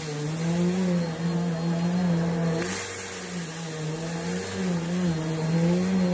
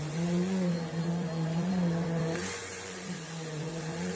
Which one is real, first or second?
first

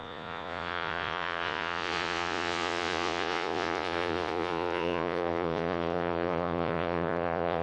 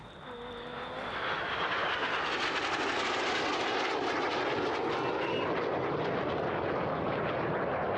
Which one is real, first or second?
second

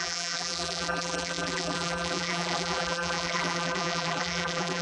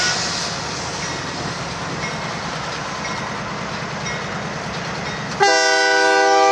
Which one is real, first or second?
second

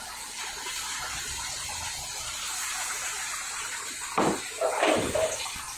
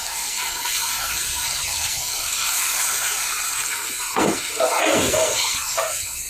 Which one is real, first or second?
first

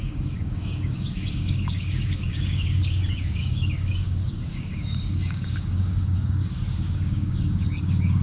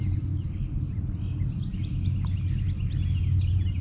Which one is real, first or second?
second